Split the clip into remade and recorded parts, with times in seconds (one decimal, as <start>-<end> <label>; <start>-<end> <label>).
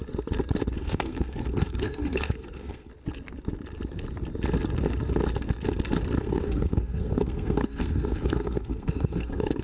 0.0-0.8 recorded; 0.8-2.9 remade; 2.9-6.2 recorded; 6.2-9.6 remade